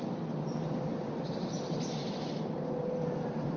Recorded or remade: remade